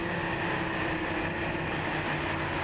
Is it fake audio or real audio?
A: real